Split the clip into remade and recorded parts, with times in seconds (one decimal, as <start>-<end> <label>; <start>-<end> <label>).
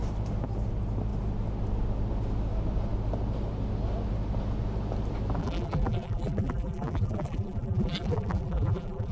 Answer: 0.0-5.4 recorded; 5.4-9.1 remade